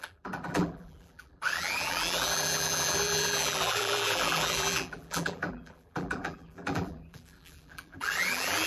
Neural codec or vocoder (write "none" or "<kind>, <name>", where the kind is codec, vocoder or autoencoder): vocoder, BigVGAN v2